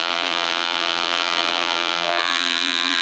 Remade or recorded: remade